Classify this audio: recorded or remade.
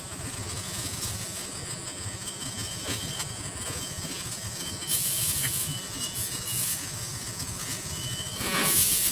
remade